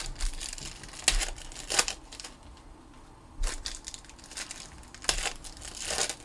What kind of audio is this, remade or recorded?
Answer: recorded